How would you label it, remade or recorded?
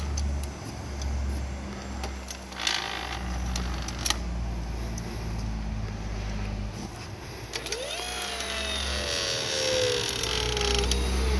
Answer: recorded